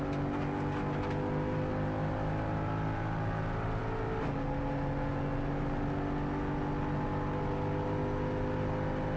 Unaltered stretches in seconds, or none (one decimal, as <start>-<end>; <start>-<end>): 0.0-9.2